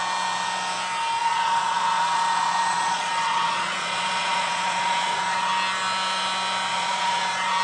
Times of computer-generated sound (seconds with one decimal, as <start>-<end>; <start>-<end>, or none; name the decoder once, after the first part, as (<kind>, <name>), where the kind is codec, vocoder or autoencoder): 1.2-5.5 (vocoder, Vocos); 6.7-7.6